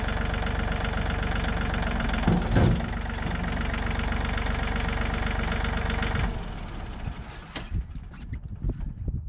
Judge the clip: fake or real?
real